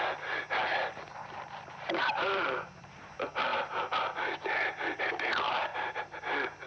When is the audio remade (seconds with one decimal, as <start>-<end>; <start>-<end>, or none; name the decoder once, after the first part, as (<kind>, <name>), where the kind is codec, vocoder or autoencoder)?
1.2-3.1 (vocoder, BigVGAN v2); 5.7-6.2